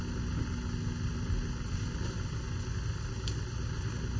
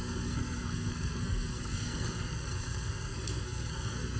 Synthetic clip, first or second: second